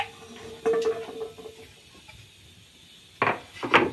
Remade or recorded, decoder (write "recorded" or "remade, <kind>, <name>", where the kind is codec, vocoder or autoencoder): recorded